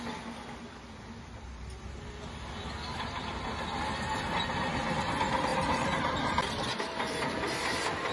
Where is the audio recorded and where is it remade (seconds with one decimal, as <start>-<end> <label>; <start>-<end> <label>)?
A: 0.0-5.5 recorded; 5.5-6.1 remade; 6.1-8.1 recorded